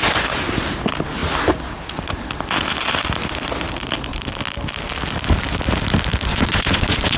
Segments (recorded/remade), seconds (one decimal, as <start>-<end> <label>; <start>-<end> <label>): 0.0-6.3 recorded; 6.3-7.2 remade